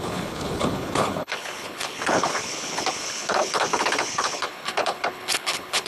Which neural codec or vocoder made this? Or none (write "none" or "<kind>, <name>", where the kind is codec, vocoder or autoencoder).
codec, HILCodec